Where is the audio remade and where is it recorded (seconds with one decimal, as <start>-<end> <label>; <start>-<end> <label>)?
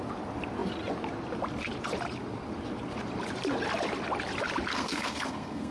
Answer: 0.0-4.7 recorded; 4.7-5.7 remade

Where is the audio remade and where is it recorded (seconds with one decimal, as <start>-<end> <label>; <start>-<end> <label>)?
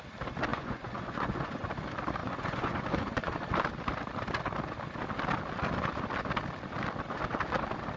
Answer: 0.0-0.5 recorded; 0.5-1.7 remade; 1.7-2.2 recorded; 2.2-3.4 remade; 3.4-8.0 recorded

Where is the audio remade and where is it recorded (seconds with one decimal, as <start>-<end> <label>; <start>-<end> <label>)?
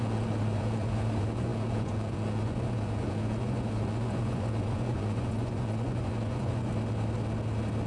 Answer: 0.0-6.7 remade; 6.7-7.9 recorded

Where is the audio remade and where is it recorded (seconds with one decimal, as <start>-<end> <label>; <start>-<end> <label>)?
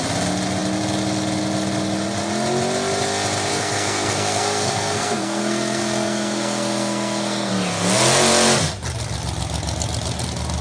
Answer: 0.0-3.5 recorded; 3.5-7.5 remade; 7.5-10.6 recorded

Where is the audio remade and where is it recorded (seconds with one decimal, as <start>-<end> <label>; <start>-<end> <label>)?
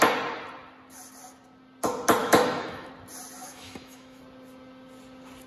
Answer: 0.0-2.2 recorded; 2.2-2.9 remade; 2.9-3.4 recorded; 3.4-4.2 remade; 4.2-5.5 recorded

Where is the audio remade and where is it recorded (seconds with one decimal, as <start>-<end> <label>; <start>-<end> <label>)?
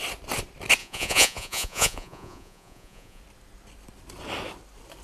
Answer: 0.0-0.8 recorded; 0.8-3.2 remade; 3.2-5.0 recorded